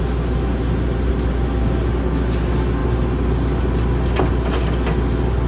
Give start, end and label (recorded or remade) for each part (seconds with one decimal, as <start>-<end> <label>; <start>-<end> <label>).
0.0-5.5 recorded